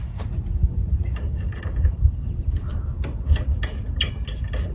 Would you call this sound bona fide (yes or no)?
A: yes